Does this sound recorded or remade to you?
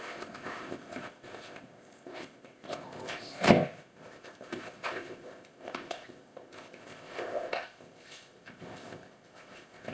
remade